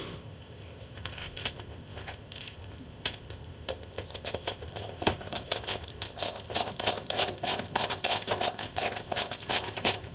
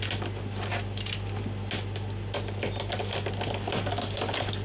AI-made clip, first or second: first